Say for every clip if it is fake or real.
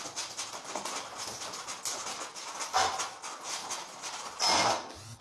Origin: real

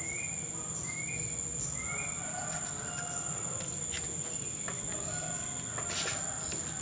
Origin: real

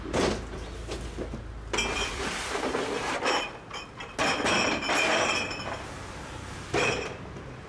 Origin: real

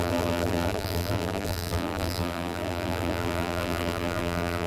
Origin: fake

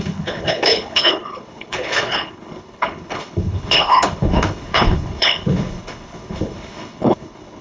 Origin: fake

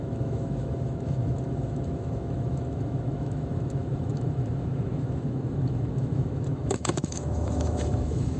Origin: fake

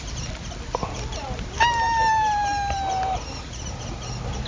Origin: real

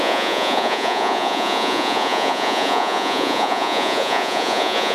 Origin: fake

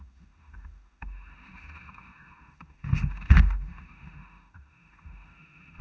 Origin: fake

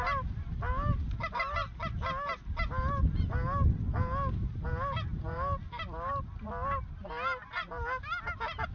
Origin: real